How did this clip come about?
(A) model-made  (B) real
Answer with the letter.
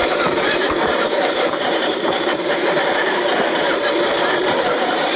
A